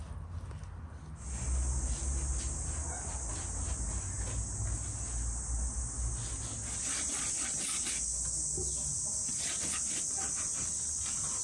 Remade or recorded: recorded